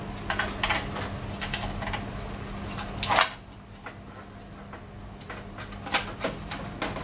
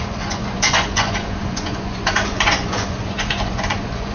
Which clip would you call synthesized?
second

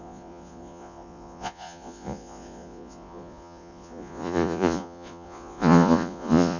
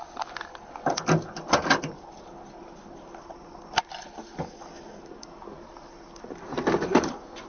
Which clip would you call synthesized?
first